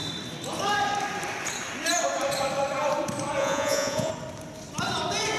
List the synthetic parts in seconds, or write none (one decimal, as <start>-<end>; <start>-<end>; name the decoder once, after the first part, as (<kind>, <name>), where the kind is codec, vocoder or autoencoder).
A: 3.4-4.1 (vocoder, Vocos)